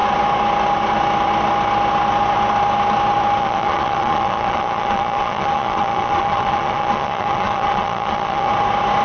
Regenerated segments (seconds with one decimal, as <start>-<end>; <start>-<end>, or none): 3.4-8.5